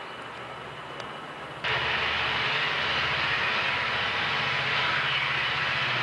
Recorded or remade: recorded